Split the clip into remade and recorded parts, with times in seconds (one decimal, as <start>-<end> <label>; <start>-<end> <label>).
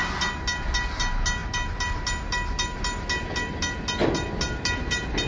0.0-5.3 recorded